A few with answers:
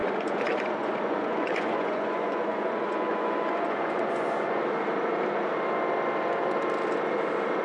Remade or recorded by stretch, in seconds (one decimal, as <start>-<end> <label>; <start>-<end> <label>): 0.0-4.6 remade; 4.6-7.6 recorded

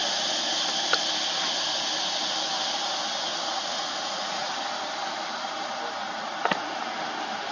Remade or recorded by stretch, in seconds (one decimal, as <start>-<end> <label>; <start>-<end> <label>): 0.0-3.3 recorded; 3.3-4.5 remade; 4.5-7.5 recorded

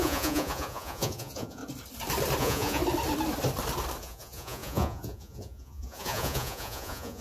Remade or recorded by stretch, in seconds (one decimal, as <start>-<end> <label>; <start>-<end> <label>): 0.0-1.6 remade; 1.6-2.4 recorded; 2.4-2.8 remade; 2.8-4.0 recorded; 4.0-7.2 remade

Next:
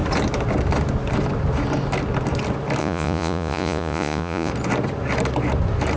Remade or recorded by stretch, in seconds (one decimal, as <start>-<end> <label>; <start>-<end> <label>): 0.0-2.8 recorded; 2.8-4.5 remade; 4.5-6.0 recorded

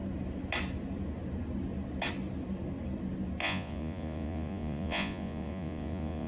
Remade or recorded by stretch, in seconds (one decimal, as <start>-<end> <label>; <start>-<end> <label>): 0.0-3.4 recorded; 3.4-6.3 remade

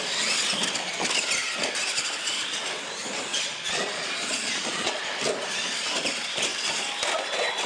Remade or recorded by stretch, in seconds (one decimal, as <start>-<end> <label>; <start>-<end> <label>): 0.0-3.3 recorded; 3.3-5.0 remade; 5.0-7.7 recorded

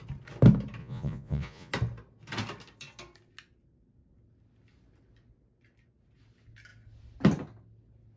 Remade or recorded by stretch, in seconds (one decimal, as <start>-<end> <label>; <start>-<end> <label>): 0.0-0.8 recorded; 0.8-1.7 remade; 1.7-8.2 recorded

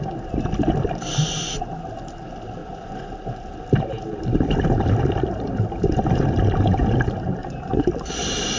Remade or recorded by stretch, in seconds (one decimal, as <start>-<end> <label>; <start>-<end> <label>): 0.0-2.6 recorded; 2.6-3.1 remade; 3.1-7.4 recorded; 7.4-7.9 remade; 7.9-8.6 recorded